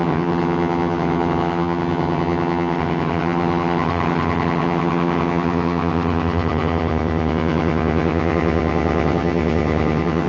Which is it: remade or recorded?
remade